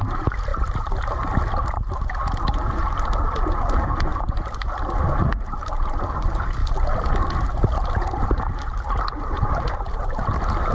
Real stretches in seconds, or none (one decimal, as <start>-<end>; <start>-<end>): 0.0-10.7